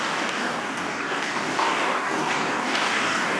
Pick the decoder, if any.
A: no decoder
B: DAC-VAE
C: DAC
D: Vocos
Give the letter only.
C